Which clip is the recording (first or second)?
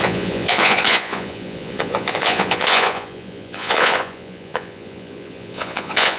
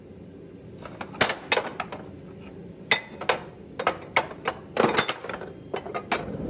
second